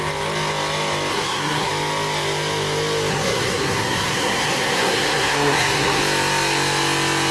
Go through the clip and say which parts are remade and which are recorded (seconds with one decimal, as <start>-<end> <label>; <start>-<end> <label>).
0.0-1.1 recorded; 1.1-1.7 remade; 1.7-3.1 recorded; 3.1-6.0 remade; 6.0-7.3 recorded